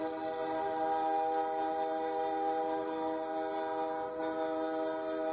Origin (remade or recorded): recorded